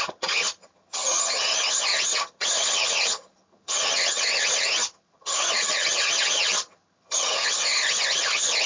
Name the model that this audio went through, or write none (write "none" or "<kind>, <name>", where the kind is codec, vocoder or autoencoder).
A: vocoder, HiFi-GAN